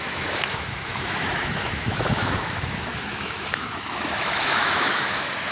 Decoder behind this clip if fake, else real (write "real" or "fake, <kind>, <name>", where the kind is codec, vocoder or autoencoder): fake, autoencoder, DAC-VAE